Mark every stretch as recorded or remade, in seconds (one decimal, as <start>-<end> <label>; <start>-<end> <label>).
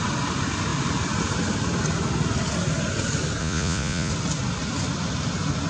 0.0-3.4 recorded; 3.4-4.1 remade; 4.1-5.7 recorded